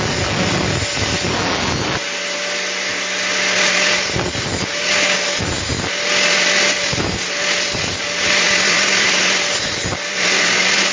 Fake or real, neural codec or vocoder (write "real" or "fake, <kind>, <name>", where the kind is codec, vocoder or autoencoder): real